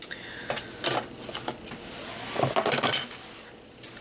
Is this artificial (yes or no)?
no